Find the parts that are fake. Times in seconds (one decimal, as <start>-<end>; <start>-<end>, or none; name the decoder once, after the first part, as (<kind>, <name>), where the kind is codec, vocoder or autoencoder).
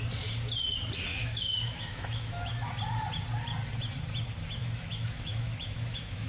1.1-2.7 (autoencoder, DAC-VAE); 4.6-6.3